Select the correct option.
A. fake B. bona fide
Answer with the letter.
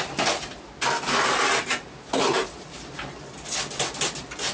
B